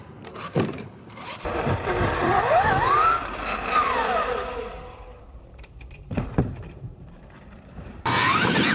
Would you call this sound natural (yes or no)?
no